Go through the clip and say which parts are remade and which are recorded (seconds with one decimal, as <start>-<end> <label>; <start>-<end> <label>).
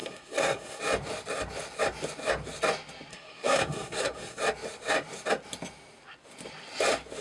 0.0-0.8 remade; 0.8-3.1 recorded; 3.1-4.4 remade; 4.4-7.2 recorded